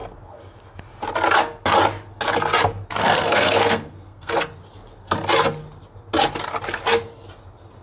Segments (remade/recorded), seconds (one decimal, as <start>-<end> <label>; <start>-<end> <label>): 0.0-3.0 recorded; 3.0-4.3 remade; 4.3-7.8 recorded